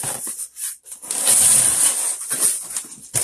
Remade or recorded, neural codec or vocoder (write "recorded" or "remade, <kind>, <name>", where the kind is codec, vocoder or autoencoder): remade, vocoder, BigVGAN v2